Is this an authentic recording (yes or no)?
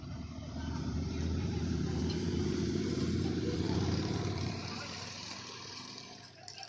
no